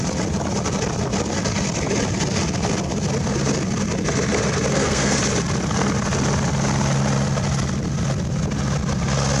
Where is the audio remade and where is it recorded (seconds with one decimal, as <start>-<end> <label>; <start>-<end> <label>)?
0.0-4.7 recorded; 4.7-5.2 remade; 5.2-9.4 recorded